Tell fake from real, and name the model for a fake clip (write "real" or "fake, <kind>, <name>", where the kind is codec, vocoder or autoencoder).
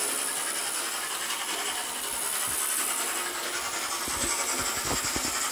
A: real